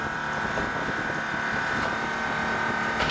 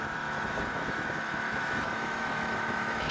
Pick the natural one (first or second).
first